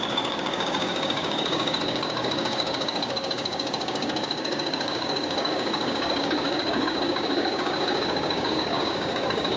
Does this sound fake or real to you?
fake